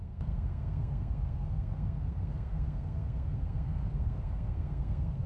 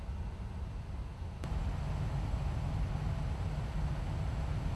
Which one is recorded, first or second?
second